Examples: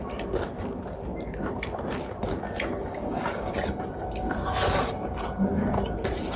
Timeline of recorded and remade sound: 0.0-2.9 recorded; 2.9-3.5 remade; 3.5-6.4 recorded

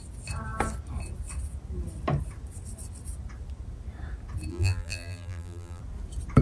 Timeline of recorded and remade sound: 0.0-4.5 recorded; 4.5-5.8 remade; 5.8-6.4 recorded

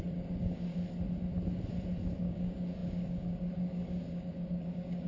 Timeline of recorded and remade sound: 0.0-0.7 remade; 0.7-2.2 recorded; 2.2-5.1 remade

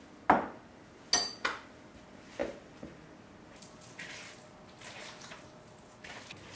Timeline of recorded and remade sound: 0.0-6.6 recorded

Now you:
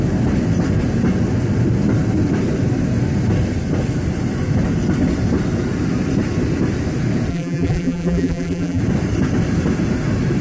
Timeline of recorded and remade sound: 0.0-7.3 recorded; 7.3-8.8 remade; 8.8-10.4 recorded

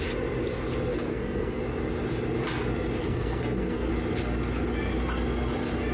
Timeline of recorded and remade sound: 0.0-0.9 recorded; 0.9-1.6 remade; 1.6-3.0 recorded; 3.0-3.9 remade; 3.9-5.9 recorded